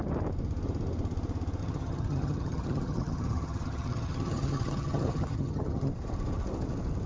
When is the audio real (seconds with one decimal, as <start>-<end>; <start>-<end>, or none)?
0.0-1.6; 5.9-7.1